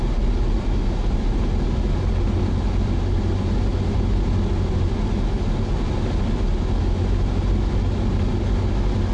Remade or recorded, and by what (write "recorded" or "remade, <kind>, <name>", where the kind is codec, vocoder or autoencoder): recorded